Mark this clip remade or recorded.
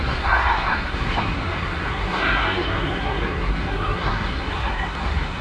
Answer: remade